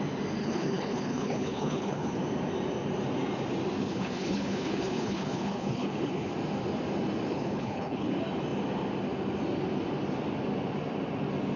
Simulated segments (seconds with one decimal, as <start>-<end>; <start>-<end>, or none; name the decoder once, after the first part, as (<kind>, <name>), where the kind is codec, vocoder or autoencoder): 0.4-2.2 (codec, HILCodec); 3.8-6.3; 7.3-8.1